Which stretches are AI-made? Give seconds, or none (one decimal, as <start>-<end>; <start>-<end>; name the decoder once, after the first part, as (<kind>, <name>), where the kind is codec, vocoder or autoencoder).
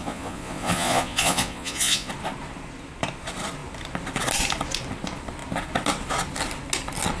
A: 0.0-2.1 (vocoder, Vocos)